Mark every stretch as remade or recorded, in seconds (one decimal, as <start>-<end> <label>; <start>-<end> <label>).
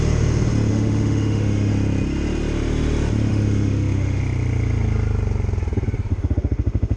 0.0-0.7 recorded; 0.7-1.7 remade; 1.7-3.3 recorded; 3.3-4.2 remade; 4.2-6.1 recorded; 6.1-7.0 remade